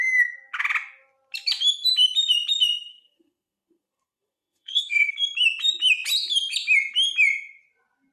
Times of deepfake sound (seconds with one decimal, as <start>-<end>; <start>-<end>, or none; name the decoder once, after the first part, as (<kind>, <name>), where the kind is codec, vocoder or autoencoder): 2.9-5.2 (codec, SNAC)